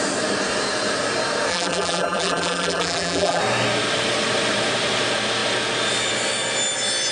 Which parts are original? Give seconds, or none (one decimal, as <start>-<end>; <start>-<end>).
0.0-1.5; 3.4-7.1